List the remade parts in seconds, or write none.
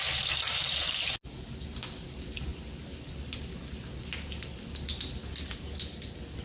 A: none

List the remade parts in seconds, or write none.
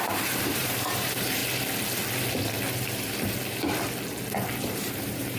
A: 0.0-1.4 (vocoder, BigVGAN v2); 4.6-5.4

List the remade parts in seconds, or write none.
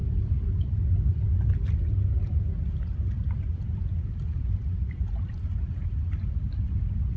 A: none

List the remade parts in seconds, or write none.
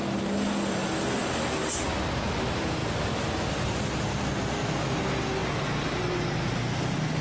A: 2.8-3.3 (vocoder, BigVGAN v2)